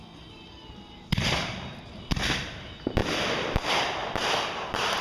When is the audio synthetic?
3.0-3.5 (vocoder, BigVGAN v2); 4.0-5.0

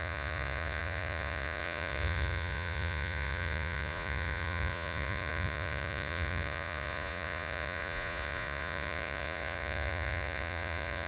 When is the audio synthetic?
0.0-11.1 (vocoder, Vocos)

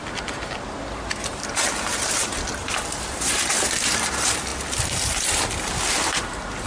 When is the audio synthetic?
2.6-4.1 (vocoder, BigVGAN v2)